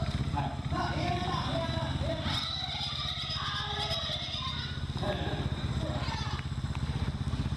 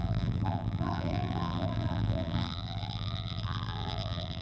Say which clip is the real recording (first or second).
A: first